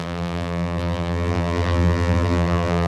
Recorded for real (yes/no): no